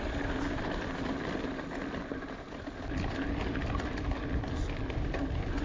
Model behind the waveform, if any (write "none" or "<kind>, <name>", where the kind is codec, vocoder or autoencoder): none